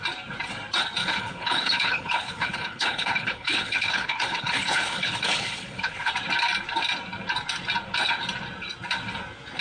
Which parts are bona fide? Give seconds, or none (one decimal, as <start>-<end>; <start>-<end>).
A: 0.0-1.0; 6.1-9.6